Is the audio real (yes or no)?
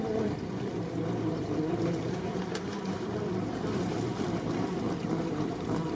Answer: no